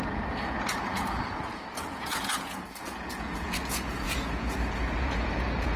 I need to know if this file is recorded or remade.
remade